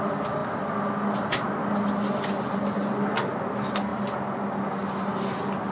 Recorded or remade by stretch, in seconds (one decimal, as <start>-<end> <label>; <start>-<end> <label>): 0.0-5.7 recorded